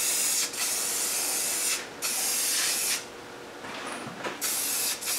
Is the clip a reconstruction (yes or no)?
no